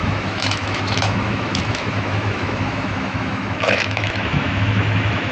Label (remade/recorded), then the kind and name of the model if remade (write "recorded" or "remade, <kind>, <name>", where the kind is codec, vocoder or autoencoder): remade, autoencoder, DAC-VAE